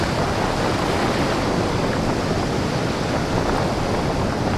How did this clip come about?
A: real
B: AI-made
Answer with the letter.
A